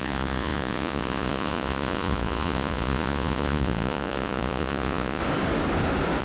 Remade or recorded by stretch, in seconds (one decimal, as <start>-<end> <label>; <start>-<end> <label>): 0.0-5.2 remade; 5.2-6.2 recorded